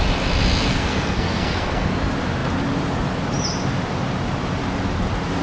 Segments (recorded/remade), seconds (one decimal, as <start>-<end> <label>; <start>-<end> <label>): 0.0-0.7 recorded; 0.7-1.9 remade; 1.9-5.4 recorded